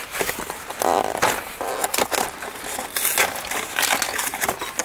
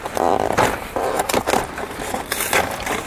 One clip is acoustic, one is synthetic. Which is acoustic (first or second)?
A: first